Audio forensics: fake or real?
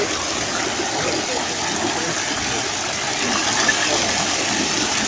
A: real